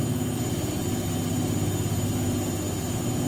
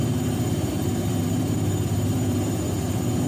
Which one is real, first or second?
first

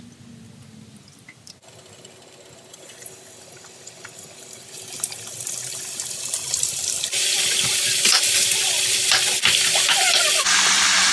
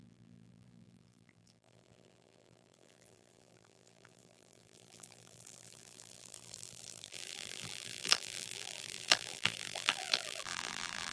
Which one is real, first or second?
first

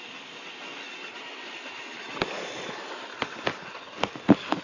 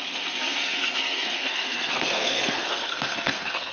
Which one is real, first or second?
first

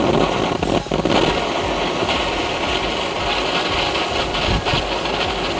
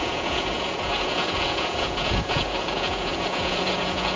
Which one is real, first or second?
first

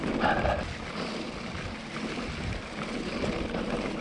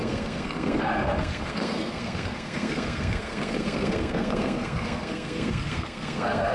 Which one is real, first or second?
first